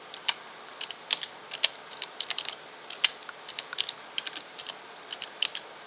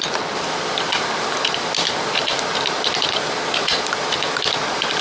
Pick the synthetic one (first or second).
second